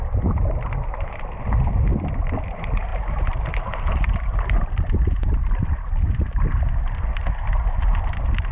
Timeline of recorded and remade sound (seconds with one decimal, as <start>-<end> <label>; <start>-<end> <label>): 0.0-8.5 recorded